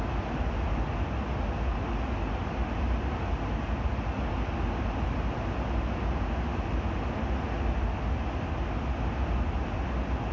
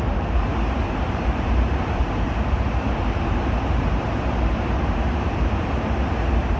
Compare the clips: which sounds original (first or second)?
first